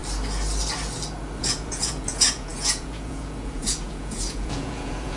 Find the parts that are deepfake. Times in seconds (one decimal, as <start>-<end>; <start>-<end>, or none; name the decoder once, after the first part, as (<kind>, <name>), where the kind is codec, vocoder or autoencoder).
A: 1.4-5.2 (vocoder, Vocos)